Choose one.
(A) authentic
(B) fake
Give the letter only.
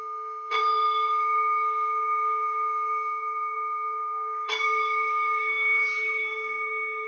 B